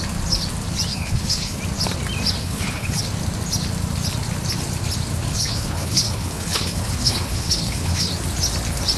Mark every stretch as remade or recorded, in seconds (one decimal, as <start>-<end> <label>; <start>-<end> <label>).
0.0-0.9 recorded; 0.9-1.6 remade; 1.6-2.4 recorded; 2.4-3.0 remade; 3.0-5.3 recorded; 5.3-8.1 remade; 8.1-9.0 recorded